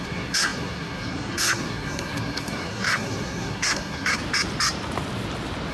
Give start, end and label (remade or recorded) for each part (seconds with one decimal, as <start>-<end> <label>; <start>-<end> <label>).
0.0-4.2 remade; 4.2-5.7 recorded